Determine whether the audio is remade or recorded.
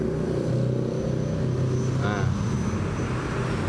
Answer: recorded